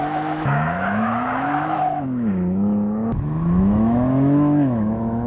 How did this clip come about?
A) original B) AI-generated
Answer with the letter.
B